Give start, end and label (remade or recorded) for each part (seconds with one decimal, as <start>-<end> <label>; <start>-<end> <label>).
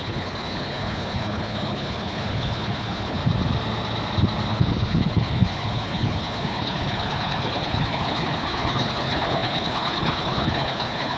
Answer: 0.0-3.2 remade; 3.2-4.5 recorded; 4.5-11.2 remade